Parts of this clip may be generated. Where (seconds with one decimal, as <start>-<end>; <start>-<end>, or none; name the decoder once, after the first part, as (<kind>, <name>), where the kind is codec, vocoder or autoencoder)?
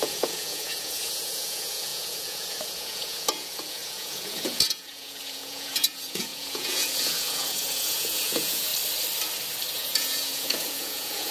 0.0-8.7 (vocoder, Vocos); 9.7-11.3